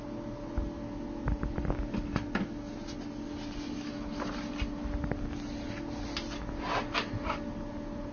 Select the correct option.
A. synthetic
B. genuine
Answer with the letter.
B